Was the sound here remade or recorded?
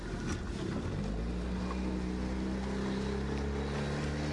recorded